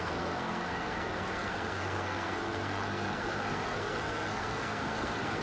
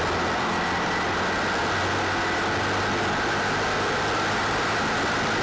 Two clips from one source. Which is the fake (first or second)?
first